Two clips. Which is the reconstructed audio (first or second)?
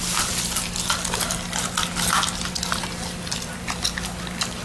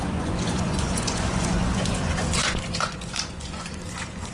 second